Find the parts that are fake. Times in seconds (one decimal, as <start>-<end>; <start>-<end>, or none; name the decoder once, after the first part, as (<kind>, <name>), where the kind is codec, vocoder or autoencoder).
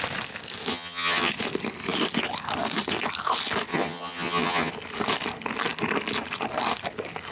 0.7-1.3 (vocoder, HiFi-GAN); 3.7-4.7